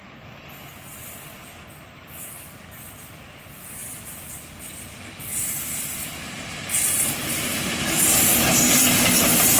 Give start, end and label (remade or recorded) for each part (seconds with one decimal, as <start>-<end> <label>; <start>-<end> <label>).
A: 0.0-9.6 remade

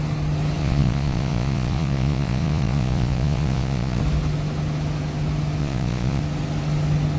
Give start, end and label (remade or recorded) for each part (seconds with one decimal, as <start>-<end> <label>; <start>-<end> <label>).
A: 0.0-0.6 recorded; 0.6-4.0 remade; 4.0-5.6 recorded; 5.6-6.2 remade; 6.2-7.2 recorded

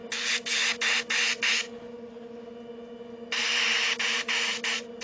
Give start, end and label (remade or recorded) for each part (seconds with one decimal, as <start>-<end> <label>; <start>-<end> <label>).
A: 0.0-5.0 recorded

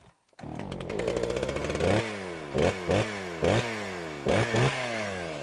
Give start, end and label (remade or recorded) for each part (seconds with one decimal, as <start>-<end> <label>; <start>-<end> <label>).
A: 0.0-1.1 remade; 1.1-4.3 recorded; 4.3-5.4 remade

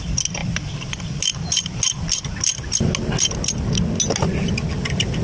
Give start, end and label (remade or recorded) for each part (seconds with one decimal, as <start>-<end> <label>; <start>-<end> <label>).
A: 0.0-5.2 recorded

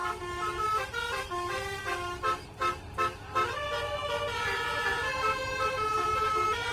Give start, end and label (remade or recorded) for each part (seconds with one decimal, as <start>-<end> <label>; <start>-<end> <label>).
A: 0.0-0.8 remade; 0.8-5.1 recorded; 5.1-6.7 remade